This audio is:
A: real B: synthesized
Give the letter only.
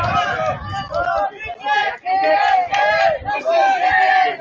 A